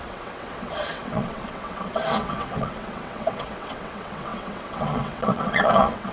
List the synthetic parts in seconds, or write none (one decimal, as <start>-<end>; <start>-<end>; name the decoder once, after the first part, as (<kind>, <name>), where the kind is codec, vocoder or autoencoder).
0.0-6.1 (vocoder, WaveNeXt)